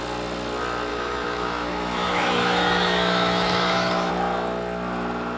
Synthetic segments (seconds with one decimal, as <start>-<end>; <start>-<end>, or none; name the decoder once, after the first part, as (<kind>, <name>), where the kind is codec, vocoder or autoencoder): 0.9-4.1 (autoencoder, DAC-VAE)